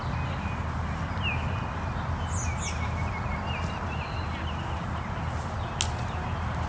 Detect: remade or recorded recorded